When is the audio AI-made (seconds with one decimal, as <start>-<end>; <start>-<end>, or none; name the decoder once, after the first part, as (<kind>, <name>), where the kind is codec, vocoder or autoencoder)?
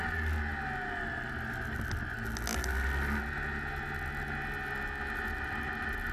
none